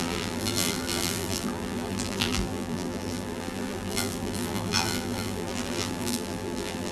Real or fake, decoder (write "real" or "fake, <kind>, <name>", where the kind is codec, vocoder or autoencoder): fake, vocoder, BigVGAN v2